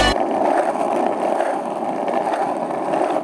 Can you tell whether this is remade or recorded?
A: recorded